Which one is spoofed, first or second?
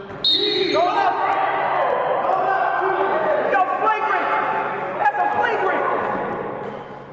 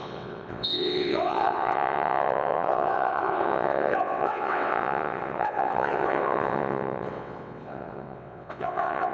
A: second